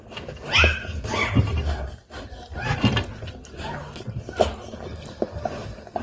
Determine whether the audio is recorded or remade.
recorded